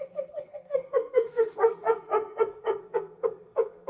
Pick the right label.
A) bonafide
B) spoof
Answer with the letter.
B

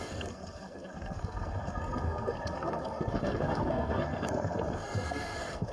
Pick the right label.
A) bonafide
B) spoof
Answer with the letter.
B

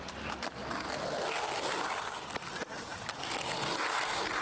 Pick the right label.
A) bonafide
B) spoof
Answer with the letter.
A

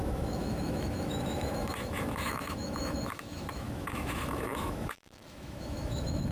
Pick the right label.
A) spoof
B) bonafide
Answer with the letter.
A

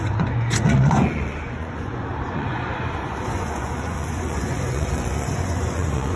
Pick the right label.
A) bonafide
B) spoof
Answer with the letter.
B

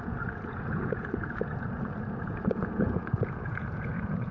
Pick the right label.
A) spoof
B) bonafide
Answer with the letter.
A